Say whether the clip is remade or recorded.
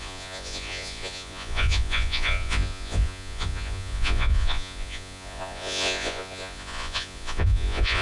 remade